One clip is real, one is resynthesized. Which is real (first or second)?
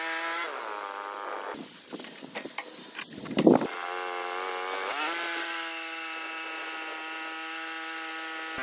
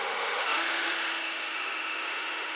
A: first